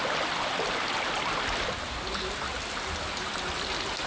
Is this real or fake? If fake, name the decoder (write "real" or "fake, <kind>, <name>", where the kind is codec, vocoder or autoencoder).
real